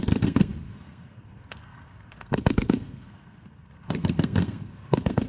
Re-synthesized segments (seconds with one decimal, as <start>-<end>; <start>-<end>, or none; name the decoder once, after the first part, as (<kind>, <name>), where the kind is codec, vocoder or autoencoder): 0.0-5.3 (codec, SNAC)